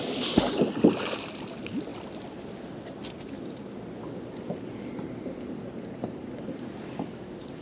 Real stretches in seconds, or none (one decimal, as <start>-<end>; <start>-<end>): 0.0-7.6